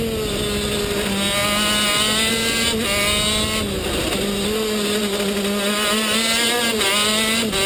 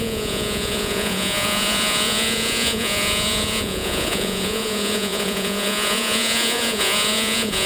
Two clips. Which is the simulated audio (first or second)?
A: second